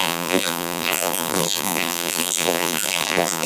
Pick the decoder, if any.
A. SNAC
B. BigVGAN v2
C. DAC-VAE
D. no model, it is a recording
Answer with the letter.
B